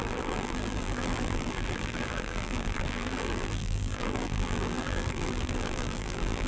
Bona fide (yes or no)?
no